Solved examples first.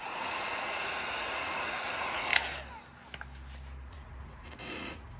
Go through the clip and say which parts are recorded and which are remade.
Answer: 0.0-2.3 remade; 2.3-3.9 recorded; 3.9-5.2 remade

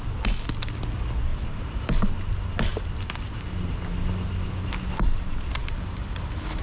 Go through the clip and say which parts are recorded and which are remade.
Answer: 0.0-1.3 recorded; 1.3-2.3 remade; 2.3-5.6 recorded; 5.6-6.6 remade

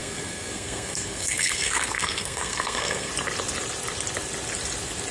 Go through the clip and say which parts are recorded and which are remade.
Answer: 0.0-3.1 remade; 3.1-5.1 recorded